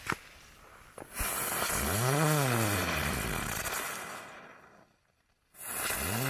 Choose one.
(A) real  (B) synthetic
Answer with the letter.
A